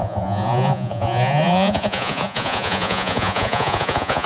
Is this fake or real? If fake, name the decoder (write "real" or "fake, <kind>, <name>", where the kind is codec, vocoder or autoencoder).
fake, vocoder, Vocos